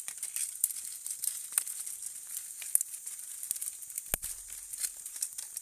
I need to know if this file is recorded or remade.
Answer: recorded